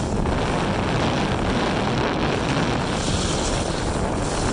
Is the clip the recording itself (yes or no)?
yes